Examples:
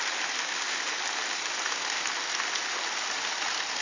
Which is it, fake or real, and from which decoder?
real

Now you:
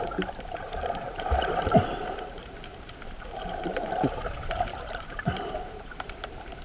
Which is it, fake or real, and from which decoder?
fake, vocoder, BigVGAN v2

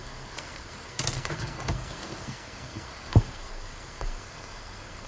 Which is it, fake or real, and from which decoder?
fake, codec, SNAC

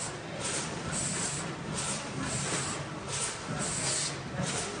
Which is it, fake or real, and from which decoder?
real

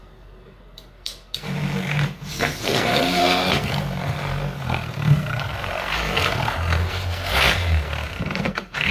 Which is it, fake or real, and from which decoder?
fake, codec, SNAC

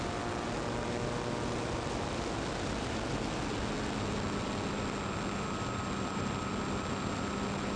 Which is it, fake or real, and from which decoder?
real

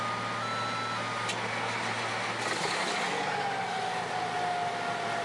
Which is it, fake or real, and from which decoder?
real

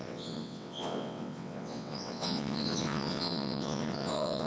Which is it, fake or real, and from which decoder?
fake, vocoder, WaveNeXt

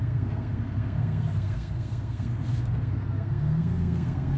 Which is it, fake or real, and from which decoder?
fake, codec, SNAC